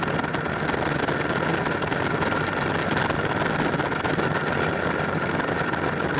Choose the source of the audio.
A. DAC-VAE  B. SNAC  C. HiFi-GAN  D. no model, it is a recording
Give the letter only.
D